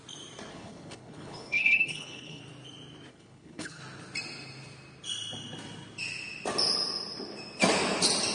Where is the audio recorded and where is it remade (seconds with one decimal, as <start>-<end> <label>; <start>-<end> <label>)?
0.0-0.5 recorded; 0.5-2.4 remade; 2.4-3.1 recorded; 3.1-3.8 remade; 3.8-8.3 recorded